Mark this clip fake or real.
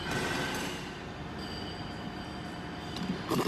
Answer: real